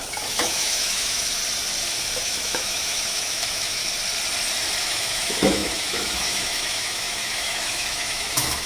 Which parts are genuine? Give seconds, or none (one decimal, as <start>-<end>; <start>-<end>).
1.4-2.0; 3.8-4.8